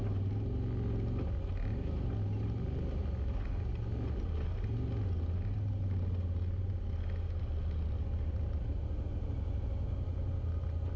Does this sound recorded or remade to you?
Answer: recorded